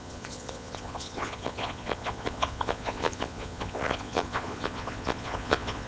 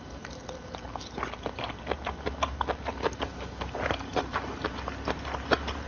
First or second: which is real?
second